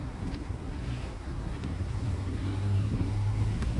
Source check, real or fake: fake